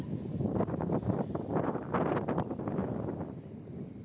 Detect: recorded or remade recorded